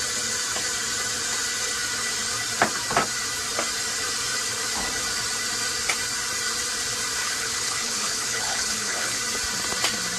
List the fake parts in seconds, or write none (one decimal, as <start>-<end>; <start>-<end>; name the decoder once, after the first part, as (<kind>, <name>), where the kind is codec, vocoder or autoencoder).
7.2-9.2 (codec, HILCodec)